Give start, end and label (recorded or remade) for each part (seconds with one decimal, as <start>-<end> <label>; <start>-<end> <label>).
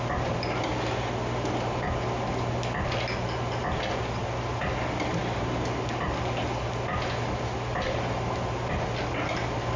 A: 0.0-9.8 recorded